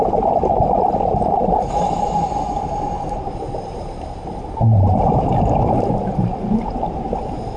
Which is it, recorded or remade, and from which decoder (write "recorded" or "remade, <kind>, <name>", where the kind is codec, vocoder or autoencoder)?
remade, vocoder, BigVGAN v2